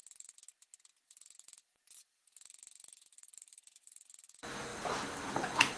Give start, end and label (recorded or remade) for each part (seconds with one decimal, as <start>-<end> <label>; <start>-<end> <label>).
0.0-5.8 recorded